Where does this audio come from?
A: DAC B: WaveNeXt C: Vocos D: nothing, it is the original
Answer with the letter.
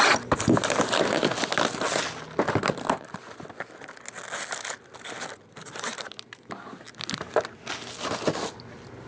D